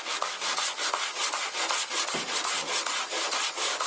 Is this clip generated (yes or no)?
no